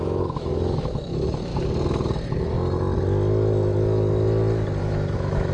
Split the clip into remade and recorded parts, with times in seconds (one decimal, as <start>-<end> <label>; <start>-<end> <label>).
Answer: 0.0-1.5 remade; 1.5-4.8 recorded; 4.8-5.5 remade

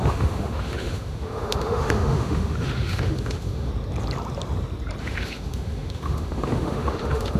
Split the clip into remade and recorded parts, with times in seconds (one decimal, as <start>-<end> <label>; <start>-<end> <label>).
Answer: 0.0-3.7 remade; 3.7-5.0 recorded; 5.0-7.4 remade

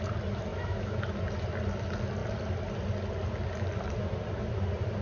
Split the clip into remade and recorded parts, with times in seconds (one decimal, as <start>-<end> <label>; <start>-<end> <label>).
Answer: 0.0-0.5 recorded; 0.5-1.0 remade; 1.0-5.0 recorded

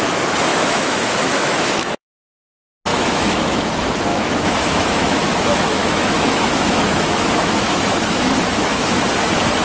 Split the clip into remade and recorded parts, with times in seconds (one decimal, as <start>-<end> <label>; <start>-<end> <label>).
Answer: 0.0-0.5 recorded; 0.5-2.1 remade; 2.1-2.9 recorded; 2.9-3.6 remade; 3.6-4.1 recorded; 4.1-9.0 remade; 9.0-9.6 recorded

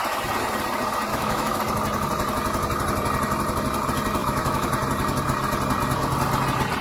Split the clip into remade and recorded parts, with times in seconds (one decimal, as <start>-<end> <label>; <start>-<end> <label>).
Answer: 0.0-1.1 recorded; 1.1-1.6 remade; 1.6-4.2 recorded; 4.2-4.7 remade; 4.7-6.8 recorded

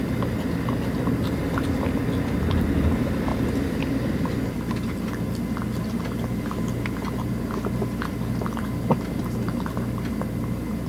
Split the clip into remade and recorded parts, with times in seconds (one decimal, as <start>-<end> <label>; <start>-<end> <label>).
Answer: 0.0-10.9 recorded

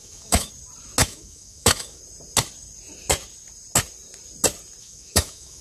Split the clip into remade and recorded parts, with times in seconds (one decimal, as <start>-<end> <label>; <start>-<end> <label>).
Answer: 0.0-0.5 remade; 0.5-1.0 recorded; 1.0-2.0 remade; 2.0-4.8 recorded; 4.8-5.6 remade